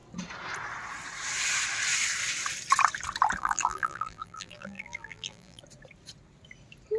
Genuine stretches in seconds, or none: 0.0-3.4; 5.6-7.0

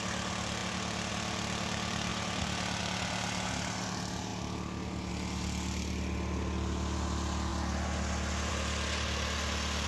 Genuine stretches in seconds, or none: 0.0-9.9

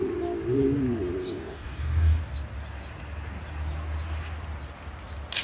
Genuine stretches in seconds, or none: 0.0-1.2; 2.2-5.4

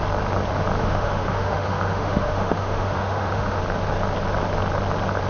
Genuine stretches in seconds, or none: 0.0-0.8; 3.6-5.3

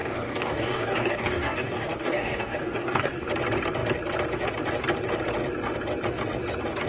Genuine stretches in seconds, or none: 3.1-6.9

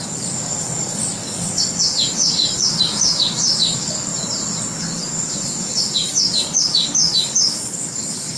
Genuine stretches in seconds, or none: 4.1-5.0

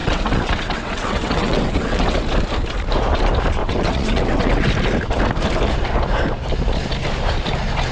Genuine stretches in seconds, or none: 2.2-3.6; 4.7-7.9